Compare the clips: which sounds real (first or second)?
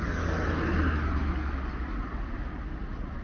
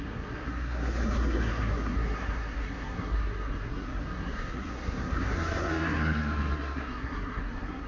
first